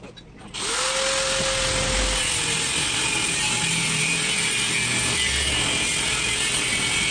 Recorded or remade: recorded